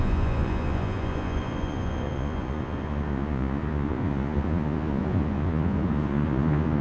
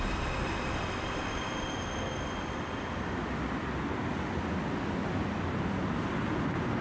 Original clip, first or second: second